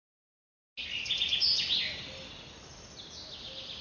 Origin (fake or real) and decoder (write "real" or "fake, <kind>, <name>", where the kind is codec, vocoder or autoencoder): real